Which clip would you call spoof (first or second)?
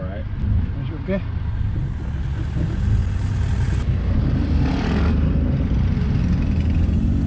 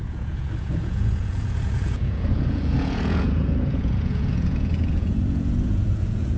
second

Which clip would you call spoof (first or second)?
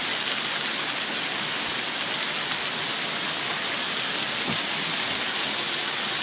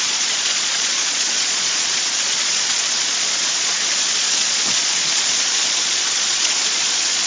second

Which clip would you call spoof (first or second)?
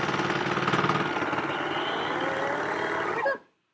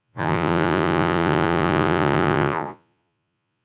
second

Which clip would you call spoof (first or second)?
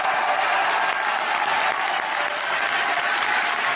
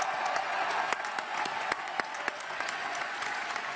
second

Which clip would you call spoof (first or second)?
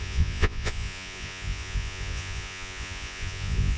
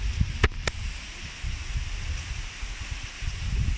first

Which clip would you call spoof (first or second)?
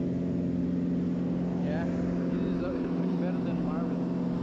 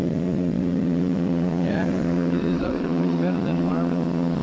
second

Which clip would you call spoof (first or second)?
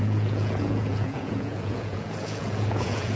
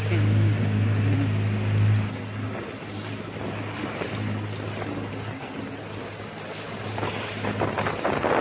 first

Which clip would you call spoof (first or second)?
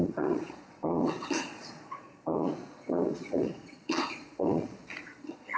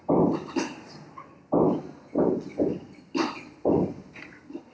first